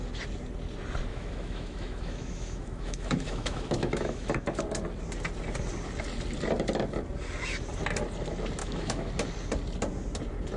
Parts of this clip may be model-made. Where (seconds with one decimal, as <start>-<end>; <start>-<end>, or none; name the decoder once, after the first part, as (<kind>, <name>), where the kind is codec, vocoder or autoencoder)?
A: 1.1-4.6 (autoencoder, DAC-VAE); 8.6-9.1

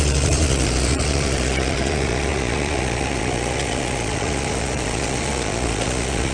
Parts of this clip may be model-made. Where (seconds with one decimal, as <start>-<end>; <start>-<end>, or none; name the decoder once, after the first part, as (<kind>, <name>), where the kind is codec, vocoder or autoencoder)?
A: 0.0-6.3 (vocoder, Vocos)

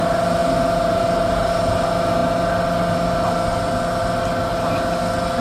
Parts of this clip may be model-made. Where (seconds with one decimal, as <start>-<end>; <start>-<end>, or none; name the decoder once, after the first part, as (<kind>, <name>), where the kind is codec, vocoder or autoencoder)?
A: 0.4-1.5 (vocoder, BigVGAN v2)

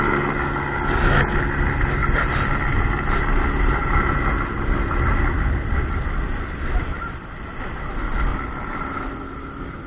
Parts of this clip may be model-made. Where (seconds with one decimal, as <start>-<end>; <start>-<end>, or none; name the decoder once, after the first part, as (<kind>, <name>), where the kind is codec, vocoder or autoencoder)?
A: 2.0-2.8 (vocoder, BigVGAN v2); 8.3-9.1